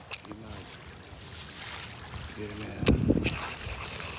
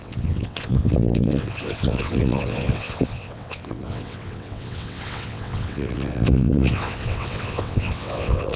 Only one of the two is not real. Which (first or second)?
second